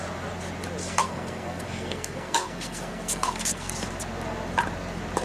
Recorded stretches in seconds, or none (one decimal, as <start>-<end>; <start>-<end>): 0.0-0.8; 3.7-5.2